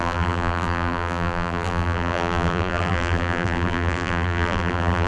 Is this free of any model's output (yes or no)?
no